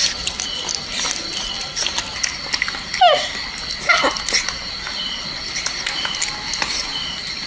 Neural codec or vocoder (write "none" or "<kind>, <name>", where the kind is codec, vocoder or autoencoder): none